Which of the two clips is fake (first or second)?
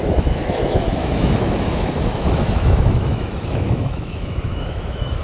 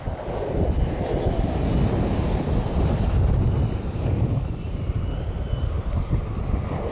first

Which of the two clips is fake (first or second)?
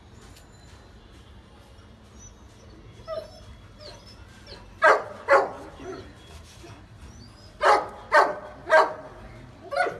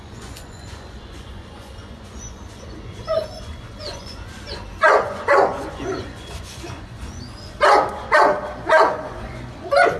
second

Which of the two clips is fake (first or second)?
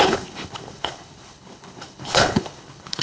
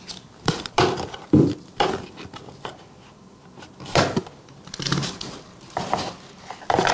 first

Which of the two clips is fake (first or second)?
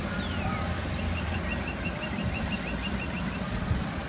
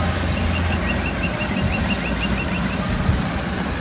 first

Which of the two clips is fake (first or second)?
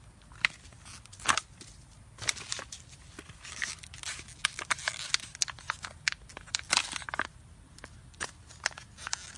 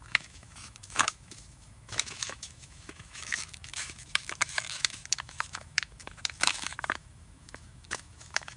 second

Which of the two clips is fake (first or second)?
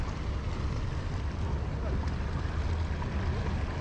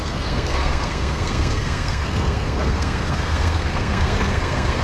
second